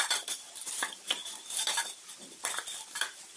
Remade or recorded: remade